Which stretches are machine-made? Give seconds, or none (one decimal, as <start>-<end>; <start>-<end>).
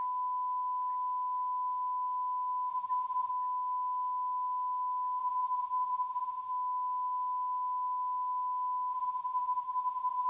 2.7-3.3; 5.2-6.5; 8.9-10.3